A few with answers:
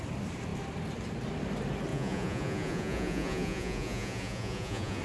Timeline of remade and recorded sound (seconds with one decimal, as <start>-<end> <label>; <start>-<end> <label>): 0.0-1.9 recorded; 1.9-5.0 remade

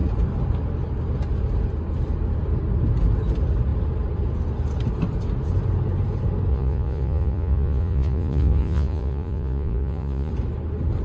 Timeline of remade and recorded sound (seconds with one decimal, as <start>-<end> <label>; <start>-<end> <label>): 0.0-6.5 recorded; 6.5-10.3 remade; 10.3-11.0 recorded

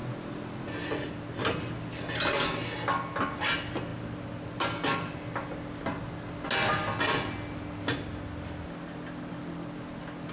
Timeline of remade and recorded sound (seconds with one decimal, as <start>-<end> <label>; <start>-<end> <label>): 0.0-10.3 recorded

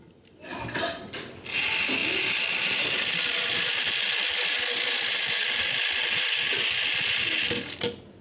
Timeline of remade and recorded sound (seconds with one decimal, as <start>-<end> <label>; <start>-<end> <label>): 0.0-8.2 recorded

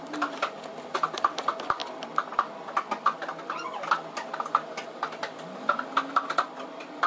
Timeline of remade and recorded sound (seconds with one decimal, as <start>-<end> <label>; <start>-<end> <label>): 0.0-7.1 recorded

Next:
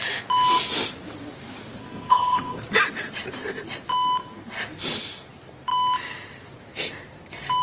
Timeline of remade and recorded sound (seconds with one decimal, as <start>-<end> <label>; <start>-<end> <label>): 0.0-1.8 recorded; 1.8-2.6 remade; 2.6-7.6 recorded

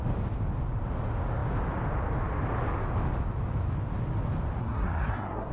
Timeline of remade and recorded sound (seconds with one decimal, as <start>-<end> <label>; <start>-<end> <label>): 0.0-4.6 recorded; 4.6-5.5 remade

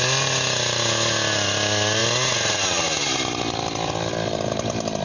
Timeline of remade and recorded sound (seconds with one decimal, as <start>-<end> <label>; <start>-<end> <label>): 0.0-5.0 recorded